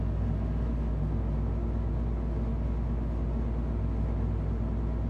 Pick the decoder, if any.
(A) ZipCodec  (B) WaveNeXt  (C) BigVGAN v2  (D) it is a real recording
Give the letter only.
D